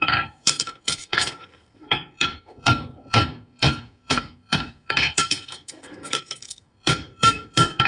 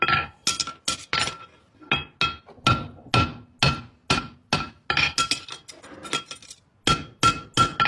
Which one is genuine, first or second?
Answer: second